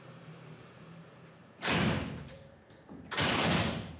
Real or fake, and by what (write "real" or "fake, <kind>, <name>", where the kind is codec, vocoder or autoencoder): fake, vocoder, BigVGAN v2